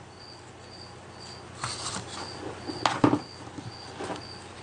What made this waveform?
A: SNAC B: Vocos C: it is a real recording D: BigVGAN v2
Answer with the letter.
C